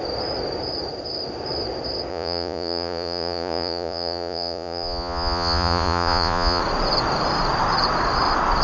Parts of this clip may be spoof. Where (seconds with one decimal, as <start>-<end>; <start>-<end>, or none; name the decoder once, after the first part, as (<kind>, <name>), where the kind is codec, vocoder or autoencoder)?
2.1-6.6 (vocoder, Vocos)